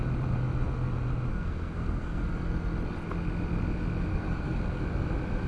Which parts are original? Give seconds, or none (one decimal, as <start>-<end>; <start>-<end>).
0.0-1.3; 2.2-4.1; 4.8-5.5